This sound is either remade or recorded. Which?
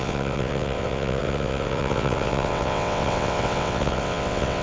remade